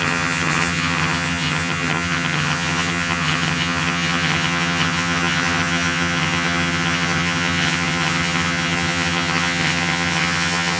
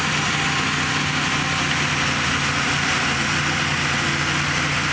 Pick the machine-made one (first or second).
first